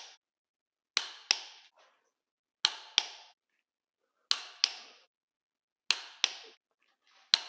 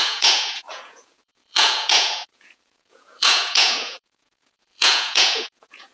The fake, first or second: second